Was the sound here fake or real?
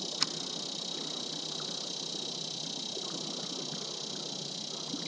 real